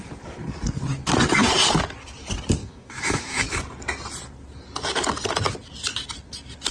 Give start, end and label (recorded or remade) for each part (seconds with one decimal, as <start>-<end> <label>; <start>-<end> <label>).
0.0-2.6 recorded; 2.6-3.6 remade; 3.6-6.7 recorded